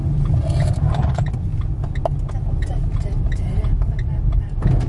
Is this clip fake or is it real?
real